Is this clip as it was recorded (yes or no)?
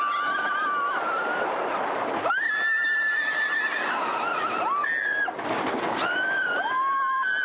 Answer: yes